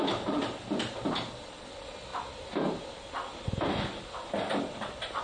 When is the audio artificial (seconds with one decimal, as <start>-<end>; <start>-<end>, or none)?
none